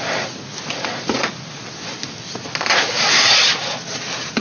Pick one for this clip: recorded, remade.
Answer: recorded